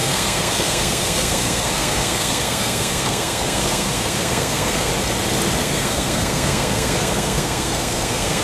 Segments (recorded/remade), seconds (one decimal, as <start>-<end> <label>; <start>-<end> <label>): 0.0-4.9 remade; 4.9-5.6 recorded; 5.6-8.4 remade